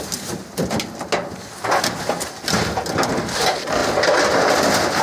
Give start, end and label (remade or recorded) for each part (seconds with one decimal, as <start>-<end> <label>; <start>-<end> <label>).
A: 0.0-5.0 recorded